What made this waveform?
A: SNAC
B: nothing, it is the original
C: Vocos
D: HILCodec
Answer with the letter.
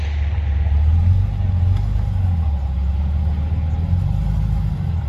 B